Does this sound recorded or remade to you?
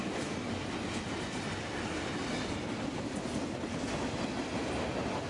recorded